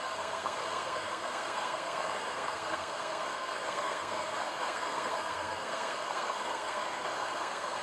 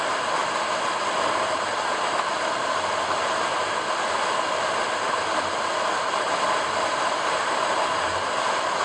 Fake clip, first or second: first